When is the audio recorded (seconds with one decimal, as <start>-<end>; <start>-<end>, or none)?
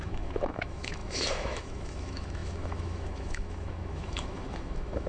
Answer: none